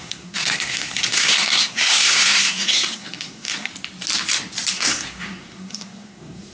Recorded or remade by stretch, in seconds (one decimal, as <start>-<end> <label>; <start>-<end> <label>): 0.0-3.7 remade; 3.7-4.7 recorded; 4.7-6.5 remade